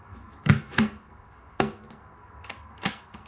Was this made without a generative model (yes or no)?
no